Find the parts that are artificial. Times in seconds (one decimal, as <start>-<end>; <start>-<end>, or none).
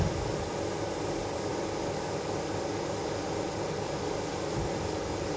none